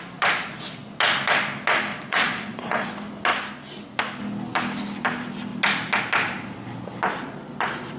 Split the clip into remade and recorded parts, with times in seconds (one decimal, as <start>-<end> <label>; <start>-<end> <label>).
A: 0.0-1.9 recorded; 1.9-2.9 remade; 2.9-8.0 recorded